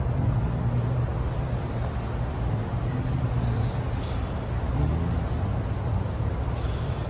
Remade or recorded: recorded